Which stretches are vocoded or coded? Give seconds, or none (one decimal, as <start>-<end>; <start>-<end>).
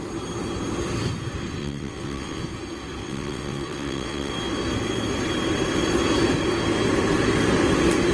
1.6-2.4; 3.0-4.3